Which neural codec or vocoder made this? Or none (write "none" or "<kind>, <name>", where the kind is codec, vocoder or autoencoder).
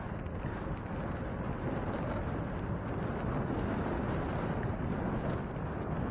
none